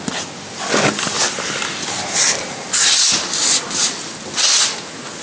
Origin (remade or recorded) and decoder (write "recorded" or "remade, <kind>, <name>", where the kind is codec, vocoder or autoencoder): recorded